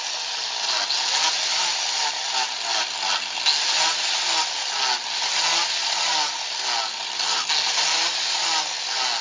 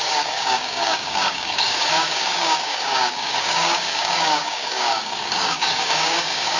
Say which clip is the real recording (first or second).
first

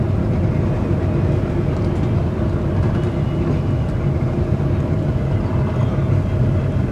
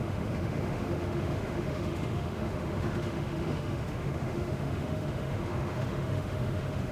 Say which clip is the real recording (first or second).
first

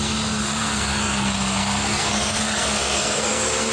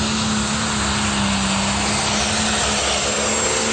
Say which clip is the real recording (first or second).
second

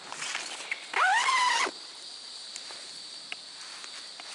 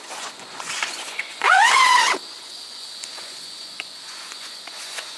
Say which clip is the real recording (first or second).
first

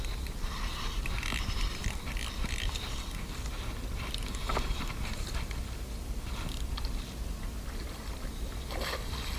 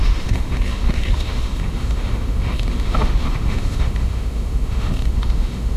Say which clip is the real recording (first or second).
first